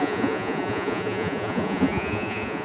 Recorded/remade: remade